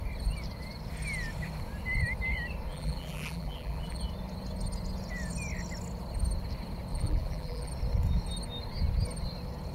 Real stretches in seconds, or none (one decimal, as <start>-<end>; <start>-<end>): 0.0-2.7; 4.0-6.9; 7.7-9.7